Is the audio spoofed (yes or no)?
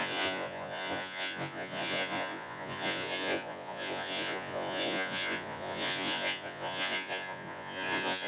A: yes